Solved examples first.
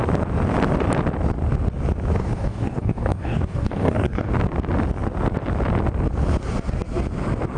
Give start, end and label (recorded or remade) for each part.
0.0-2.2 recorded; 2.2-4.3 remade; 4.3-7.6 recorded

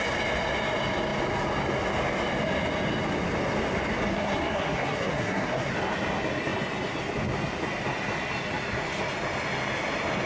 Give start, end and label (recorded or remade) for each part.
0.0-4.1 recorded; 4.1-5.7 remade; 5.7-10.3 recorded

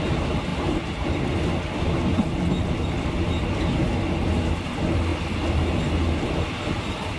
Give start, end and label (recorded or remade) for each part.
0.0-7.2 recorded